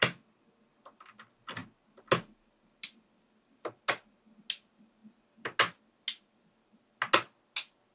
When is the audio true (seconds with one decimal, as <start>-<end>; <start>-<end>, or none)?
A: 0.0-7.9